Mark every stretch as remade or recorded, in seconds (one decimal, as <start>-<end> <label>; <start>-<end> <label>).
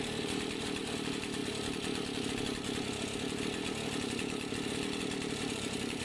0.0-1.4 remade; 1.4-5.0 recorded; 5.0-6.0 remade